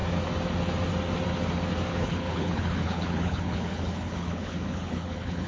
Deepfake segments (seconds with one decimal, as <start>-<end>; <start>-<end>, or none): 1.9-5.5